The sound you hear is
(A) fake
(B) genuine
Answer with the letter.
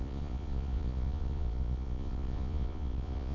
A